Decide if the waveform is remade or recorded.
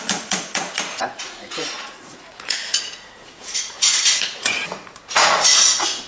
remade